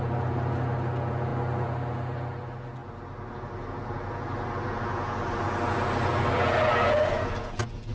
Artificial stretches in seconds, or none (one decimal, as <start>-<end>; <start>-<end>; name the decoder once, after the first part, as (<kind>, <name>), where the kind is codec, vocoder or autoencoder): none